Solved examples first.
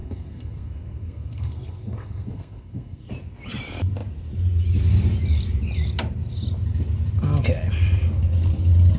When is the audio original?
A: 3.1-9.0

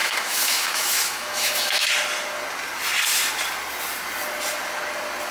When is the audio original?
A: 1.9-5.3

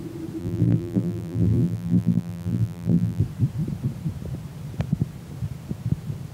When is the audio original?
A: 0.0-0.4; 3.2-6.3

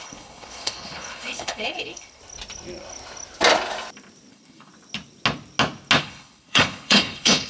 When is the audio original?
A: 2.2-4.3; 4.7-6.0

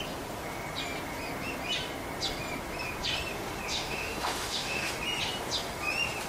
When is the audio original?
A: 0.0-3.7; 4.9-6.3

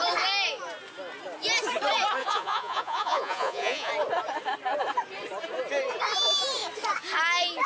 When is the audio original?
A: 0.0-2.2; 3.9-7.7

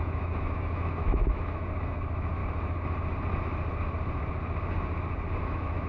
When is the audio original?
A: 2.4-5.4

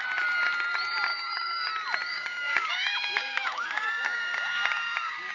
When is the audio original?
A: 0.0-1.1; 1.7-2.1